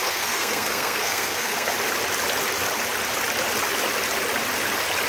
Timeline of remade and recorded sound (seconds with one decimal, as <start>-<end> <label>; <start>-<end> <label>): 0.0-1.7 remade; 1.7-5.1 recorded